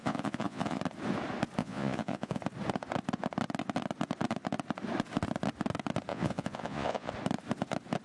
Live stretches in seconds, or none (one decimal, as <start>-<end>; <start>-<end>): 0.8-1.6; 2.4-6.1; 7.1-8.0